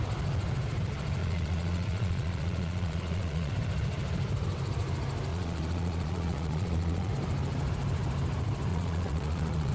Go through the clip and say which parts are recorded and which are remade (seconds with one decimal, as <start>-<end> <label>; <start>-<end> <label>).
0.0-1.2 recorded; 1.2-3.5 remade; 3.5-5.3 recorded; 5.3-7.1 remade; 7.1-8.7 recorded; 8.7-9.7 remade